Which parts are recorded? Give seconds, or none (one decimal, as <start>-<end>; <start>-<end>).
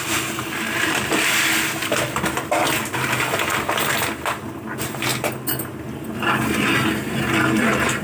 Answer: 5.1-7.2